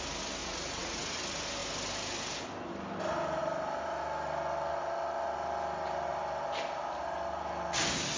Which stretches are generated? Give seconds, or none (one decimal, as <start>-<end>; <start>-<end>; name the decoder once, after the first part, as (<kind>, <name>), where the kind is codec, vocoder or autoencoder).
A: 0.4-1.2 (vocoder, Vocos)